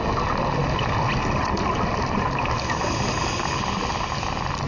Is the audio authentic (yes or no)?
yes